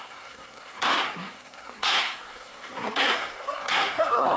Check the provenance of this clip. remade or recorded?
remade